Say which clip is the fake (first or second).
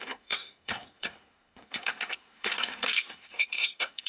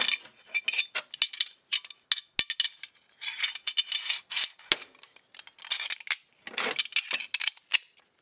first